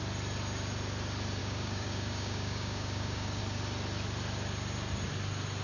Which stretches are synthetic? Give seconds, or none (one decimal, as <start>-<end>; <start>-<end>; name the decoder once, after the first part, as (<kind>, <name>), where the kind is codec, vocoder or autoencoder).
1.4-3.4 (codec, DAC)